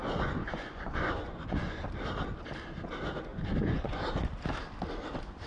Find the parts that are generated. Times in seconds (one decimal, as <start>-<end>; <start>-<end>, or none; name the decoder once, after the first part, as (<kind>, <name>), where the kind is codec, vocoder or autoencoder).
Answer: 0.0-1.8 (vocoder, Vocos); 3.3-4.0